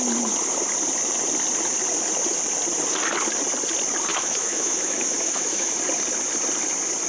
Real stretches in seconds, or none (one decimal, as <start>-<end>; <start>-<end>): 0.0-4.1; 5.7-7.1